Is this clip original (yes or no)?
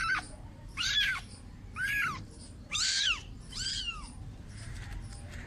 no